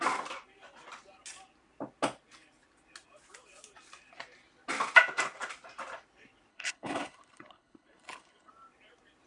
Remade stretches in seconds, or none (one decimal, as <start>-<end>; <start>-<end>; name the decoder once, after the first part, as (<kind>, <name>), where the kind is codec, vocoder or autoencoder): 6.5-8.5 (codec, HILCodec)